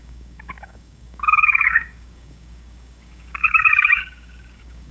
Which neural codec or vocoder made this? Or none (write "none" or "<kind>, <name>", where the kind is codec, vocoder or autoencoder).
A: codec, DAC